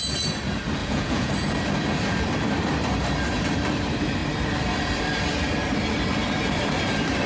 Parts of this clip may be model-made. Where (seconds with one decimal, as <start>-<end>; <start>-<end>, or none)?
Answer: 0.8-1.3